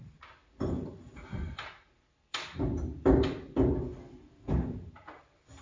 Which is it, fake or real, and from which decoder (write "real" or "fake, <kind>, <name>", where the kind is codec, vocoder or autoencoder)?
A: fake, vocoder, BigVGAN v2